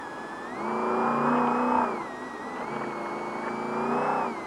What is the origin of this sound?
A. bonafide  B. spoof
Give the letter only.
A